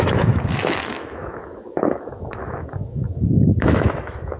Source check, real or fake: fake